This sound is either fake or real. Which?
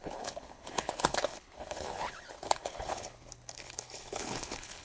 fake